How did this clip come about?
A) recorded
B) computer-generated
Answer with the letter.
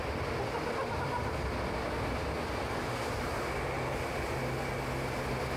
A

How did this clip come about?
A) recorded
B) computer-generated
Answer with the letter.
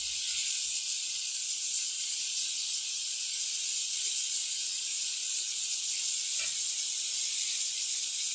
A